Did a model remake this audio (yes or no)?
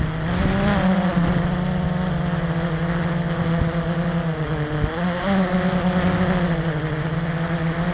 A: no